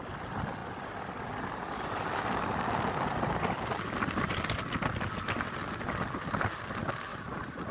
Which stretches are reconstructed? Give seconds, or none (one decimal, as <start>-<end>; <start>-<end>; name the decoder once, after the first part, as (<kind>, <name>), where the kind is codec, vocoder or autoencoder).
7.1-7.7 (vocoder, Vocos)